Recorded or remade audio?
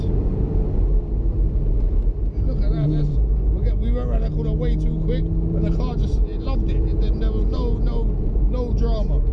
recorded